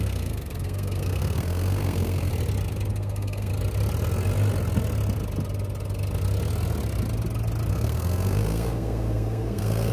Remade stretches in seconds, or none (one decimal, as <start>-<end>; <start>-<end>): 0.0-2.3; 2.9-3.5; 7.7-9.9